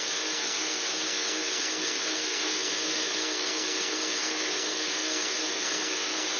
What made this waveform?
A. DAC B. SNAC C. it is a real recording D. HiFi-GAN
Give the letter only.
B